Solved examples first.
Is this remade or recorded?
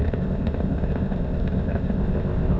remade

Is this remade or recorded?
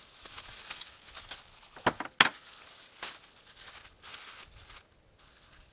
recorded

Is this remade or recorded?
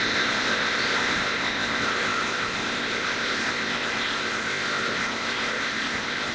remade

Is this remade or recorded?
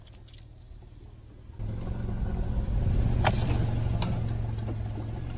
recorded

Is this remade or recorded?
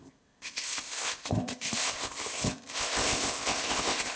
remade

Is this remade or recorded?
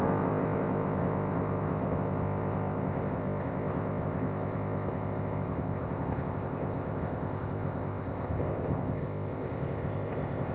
remade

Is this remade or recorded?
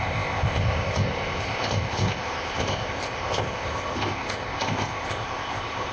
remade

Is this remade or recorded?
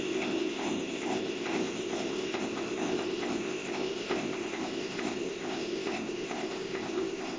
remade